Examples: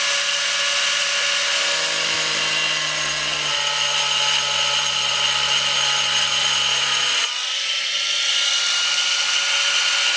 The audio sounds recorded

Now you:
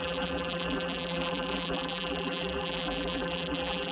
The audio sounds remade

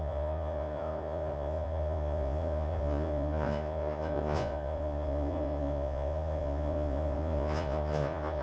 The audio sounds remade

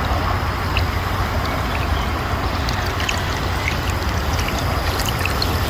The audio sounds recorded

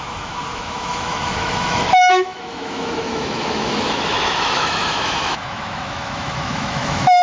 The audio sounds remade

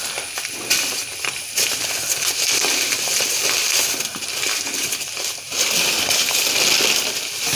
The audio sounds recorded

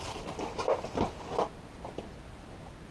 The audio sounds recorded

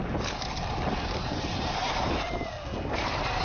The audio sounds recorded